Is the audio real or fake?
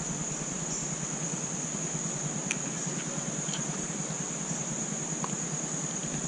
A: real